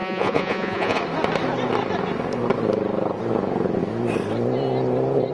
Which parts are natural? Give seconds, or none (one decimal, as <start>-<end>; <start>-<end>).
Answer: 1.0-5.3